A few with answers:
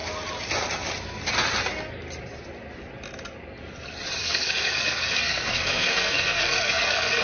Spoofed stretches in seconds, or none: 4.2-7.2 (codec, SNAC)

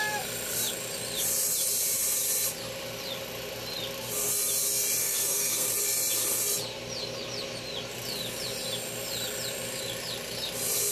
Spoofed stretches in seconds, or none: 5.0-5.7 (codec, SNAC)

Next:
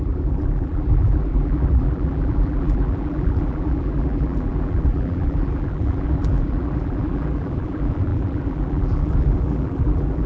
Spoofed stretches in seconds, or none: 0.0-10.3 (vocoder, BigVGAN v2)

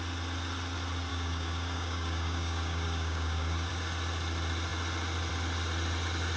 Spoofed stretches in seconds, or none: 1.1-3.7 (codec, DAC)